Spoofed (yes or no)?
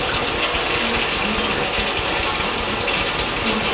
no